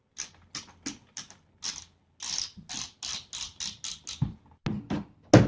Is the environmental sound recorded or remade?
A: recorded